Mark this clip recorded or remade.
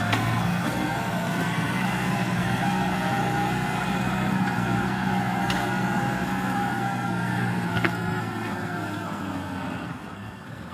remade